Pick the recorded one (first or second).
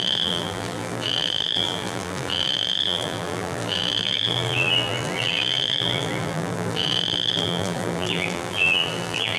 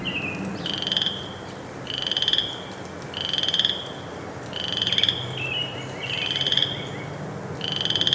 second